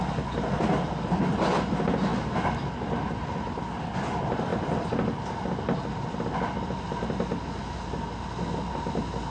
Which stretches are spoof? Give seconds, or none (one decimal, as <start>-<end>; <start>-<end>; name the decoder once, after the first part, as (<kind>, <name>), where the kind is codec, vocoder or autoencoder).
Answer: none